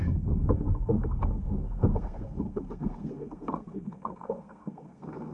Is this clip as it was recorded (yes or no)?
no